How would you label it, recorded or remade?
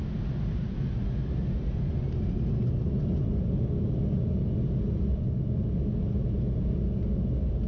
recorded